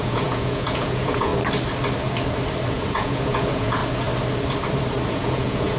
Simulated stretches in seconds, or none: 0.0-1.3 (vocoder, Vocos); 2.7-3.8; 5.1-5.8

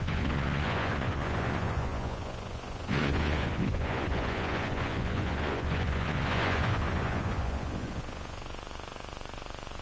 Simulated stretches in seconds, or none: 0.0-9.8 (vocoder, Vocos)

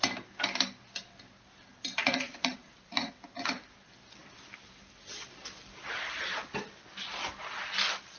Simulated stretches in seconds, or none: 2.0-3.1 (vocoder, Vocos)